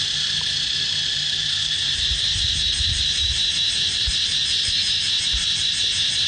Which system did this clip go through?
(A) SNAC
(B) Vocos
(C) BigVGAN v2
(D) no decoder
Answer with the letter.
C